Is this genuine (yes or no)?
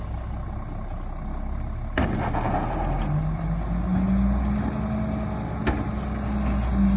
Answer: yes